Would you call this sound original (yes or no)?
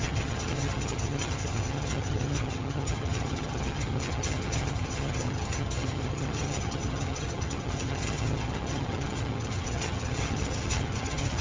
no